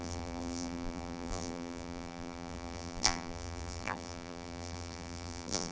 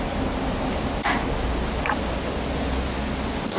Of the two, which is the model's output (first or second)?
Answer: first